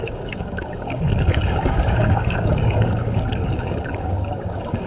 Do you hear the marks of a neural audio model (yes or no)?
yes